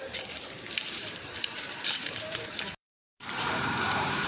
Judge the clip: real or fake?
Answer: fake